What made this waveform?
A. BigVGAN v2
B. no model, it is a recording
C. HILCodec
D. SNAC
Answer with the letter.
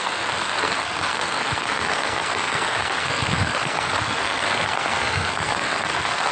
D